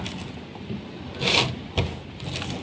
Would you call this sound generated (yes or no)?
no